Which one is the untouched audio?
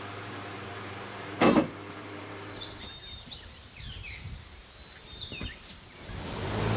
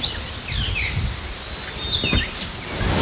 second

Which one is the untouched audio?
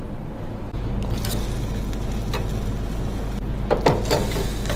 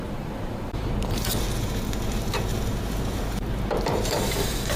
first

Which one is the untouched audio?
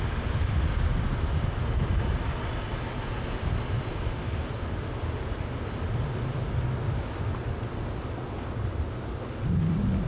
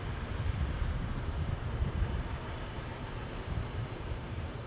first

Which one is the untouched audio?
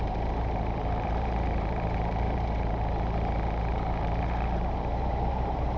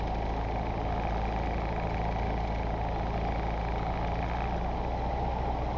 second